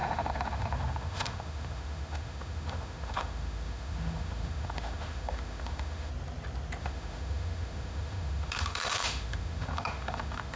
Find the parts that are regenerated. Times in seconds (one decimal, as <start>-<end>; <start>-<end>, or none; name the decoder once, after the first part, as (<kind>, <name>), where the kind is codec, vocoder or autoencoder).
0.0-6.1 (autoencoder, DAC-VAE); 6.8-10.6